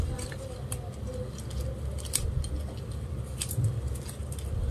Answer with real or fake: real